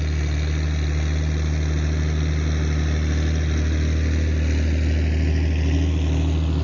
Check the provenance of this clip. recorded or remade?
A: recorded